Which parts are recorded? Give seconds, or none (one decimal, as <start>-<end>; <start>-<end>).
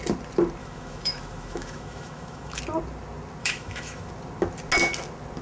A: 0.0-0.6; 2.6-3.4; 4.1-5.4